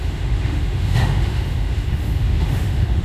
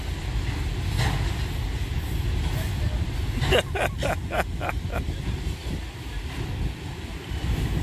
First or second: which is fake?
first